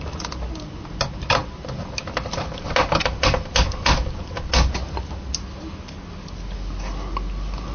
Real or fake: real